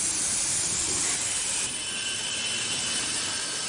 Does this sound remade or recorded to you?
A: remade